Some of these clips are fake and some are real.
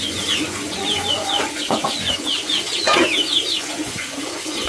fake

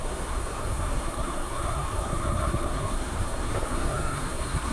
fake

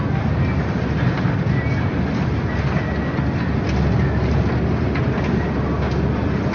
real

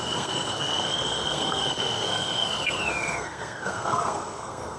fake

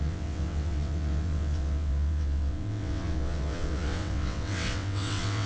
fake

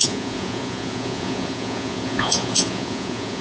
fake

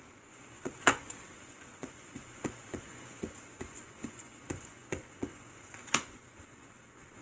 fake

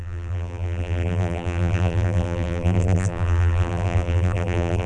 fake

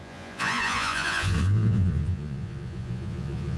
fake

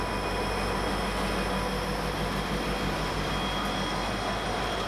real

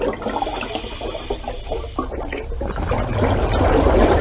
real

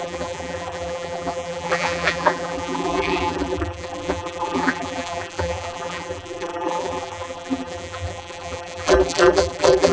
fake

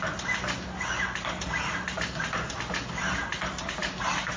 real